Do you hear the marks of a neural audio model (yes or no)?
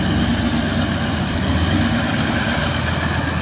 no